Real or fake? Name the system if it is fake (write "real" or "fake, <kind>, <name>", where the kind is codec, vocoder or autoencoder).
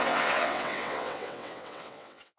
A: fake, vocoder, WaveNeXt